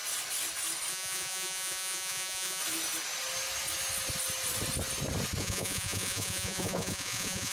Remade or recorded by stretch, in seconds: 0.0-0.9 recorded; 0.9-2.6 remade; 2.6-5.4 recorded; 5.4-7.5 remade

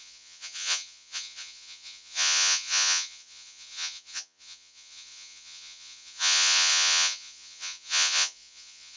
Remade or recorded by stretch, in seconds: 0.0-9.0 remade